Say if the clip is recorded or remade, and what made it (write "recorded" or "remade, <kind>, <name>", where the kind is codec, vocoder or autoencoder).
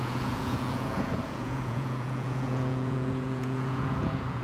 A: remade, vocoder, Vocos